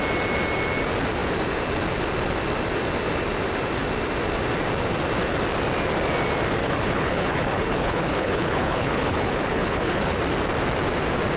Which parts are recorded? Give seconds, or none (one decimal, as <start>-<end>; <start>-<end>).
0.0-6.6; 10.2-11.4